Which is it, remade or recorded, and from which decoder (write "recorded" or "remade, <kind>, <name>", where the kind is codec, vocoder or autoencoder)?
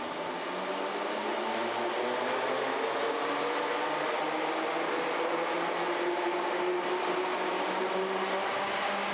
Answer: recorded